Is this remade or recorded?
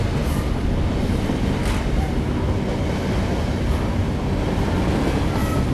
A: recorded